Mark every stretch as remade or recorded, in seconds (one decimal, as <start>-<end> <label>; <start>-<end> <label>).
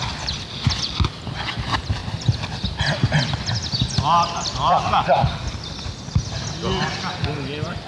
0.0-7.9 recorded